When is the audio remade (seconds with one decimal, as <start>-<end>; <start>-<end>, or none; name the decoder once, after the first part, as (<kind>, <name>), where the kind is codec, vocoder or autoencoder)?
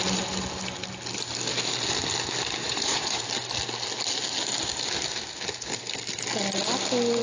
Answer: 2.6-3.2 (vocoder, Vocos)